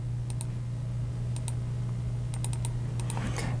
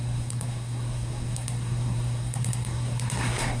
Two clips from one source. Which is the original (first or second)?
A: first